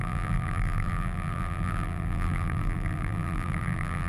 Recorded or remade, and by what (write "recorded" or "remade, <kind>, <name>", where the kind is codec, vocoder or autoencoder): remade, vocoder, BigVGAN v2